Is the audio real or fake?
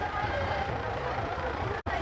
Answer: fake